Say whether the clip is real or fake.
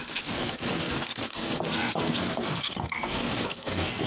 fake